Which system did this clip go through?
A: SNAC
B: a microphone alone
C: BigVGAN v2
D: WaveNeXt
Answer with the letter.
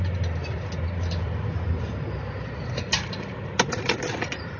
B